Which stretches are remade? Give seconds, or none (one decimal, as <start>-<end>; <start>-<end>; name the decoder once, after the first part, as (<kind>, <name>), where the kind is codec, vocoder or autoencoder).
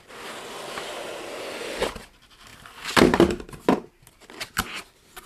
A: none